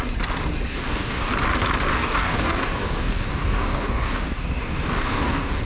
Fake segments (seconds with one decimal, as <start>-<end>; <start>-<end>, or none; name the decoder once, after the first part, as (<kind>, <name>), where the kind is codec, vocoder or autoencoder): 0.7-1.3 (codec, DAC); 1.9-5.6